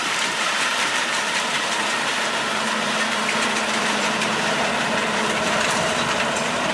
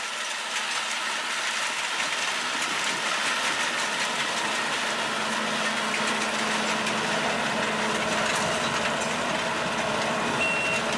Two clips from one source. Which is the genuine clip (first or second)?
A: second